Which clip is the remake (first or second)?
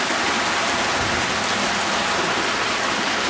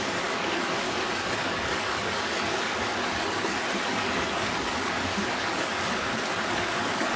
second